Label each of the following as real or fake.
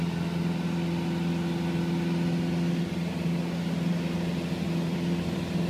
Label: real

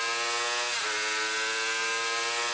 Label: real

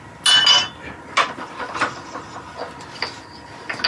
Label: real